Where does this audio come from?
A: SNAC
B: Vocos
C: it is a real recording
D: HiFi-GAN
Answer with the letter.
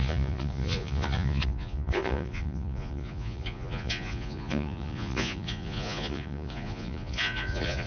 B